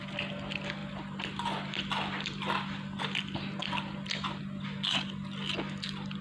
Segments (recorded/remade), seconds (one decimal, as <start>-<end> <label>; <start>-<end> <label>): 0.0-0.8 recorded; 0.8-3.0 remade; 3.0-3.6 recorded; 3.6-4.4 remade; 4.4-6.2 recorded